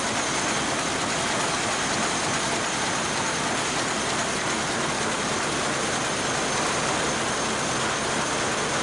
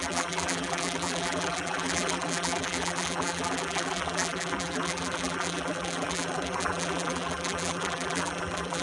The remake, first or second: second